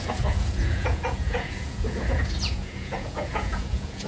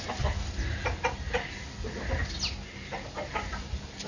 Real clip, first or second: second